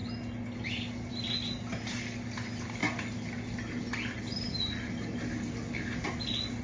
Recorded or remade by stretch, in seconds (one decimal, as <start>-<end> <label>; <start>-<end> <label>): 0.0-6.6 recorded